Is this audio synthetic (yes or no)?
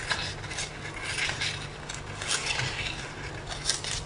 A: no